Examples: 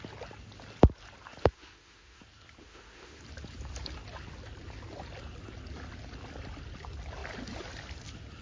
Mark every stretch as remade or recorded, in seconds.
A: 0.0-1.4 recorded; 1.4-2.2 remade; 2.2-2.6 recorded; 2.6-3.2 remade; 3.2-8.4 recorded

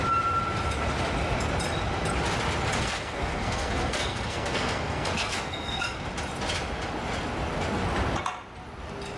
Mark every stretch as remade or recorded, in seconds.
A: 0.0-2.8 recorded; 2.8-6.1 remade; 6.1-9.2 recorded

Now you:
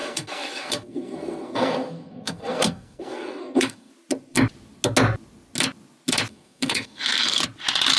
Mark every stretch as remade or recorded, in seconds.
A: 0.0-3.9 remade; 3.9-6.3 recorded; 6.3-7.4 remade; 7.4-8.0 recorded

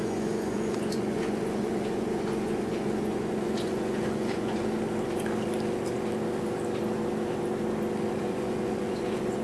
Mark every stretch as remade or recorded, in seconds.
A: 0.0-4.6 remade; 4.6-8.2 recorded; 8.2-9.4 remade